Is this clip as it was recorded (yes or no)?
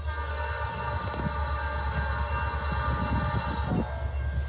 yes